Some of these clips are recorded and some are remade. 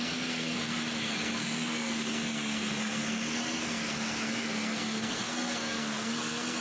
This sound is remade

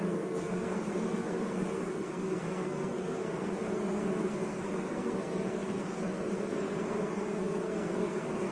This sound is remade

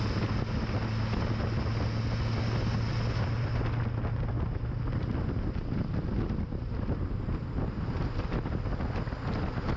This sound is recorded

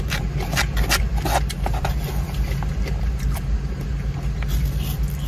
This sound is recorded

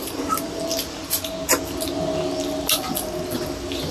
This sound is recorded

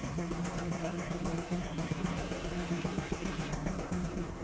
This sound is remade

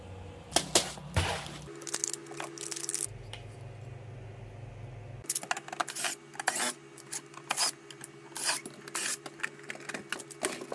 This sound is recorded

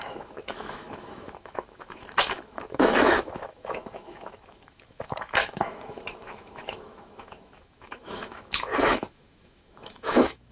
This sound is remade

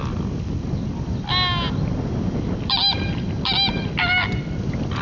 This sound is recorded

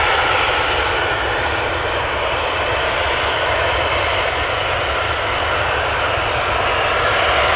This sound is recorded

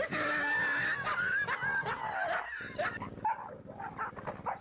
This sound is recorded